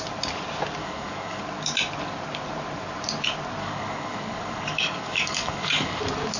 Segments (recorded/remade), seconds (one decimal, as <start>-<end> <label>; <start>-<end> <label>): 0.0-0.8 recorded; 0.8-1.4 remade; 1.4-3.6 recorded; 3.6-6.0 remade; 6.0-6.4 recorded